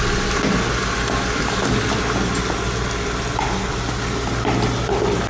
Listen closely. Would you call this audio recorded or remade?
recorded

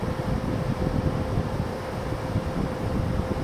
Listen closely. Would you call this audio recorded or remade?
recorded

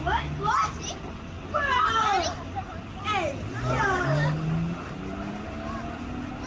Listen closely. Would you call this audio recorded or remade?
recorded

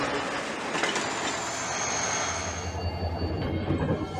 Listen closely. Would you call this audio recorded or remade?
recorded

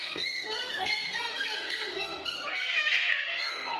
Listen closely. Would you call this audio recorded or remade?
remade